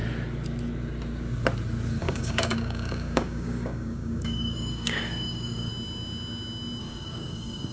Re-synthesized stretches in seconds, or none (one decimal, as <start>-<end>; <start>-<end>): 2.0-5.7; 6.8-7.7